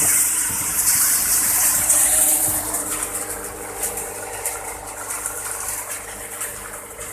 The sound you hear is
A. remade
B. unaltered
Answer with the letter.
A